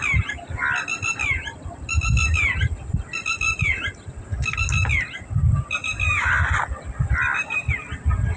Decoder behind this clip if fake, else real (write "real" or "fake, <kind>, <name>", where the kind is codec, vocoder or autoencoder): real